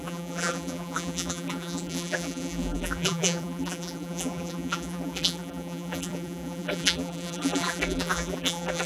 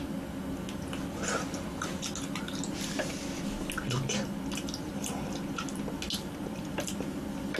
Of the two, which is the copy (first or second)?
first